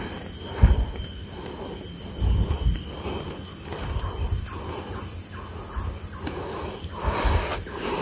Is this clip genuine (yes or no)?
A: yes